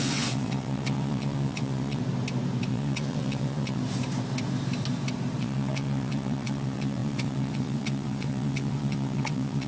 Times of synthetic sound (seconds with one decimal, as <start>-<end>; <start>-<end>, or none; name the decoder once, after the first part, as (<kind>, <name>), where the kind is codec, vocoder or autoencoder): 0.0-2.0 (vocoder, WaveNeXt); 2.7-3.8; 5.4-9.7